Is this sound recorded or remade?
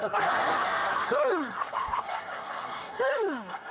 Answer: remade